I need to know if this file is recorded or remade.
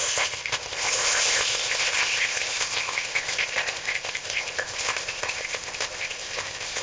remade